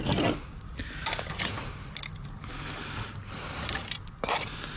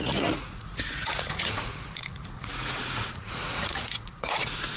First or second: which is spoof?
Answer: second